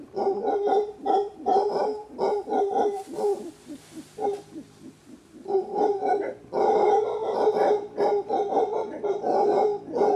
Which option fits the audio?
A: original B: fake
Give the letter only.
A